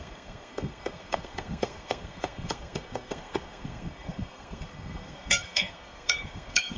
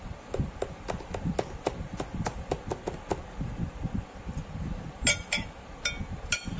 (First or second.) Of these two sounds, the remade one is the first